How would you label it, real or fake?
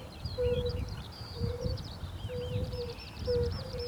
fake